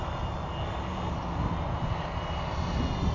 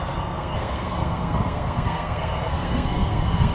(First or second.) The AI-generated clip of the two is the second